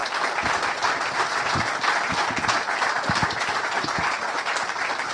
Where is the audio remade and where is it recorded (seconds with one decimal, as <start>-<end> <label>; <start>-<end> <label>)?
0.0-5.1 recorded